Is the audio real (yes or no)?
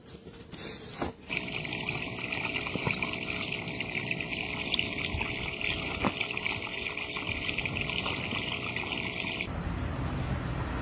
yes